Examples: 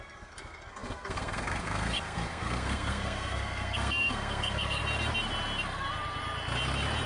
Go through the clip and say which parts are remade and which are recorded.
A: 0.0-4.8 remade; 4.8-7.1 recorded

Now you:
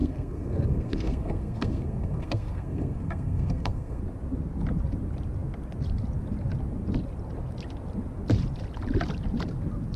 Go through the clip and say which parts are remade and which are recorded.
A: 0.0-4.0 remade; 4.0-10.0 recorded

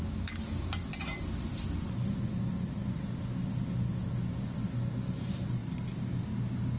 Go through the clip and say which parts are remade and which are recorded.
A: 0.0-6.8 recorded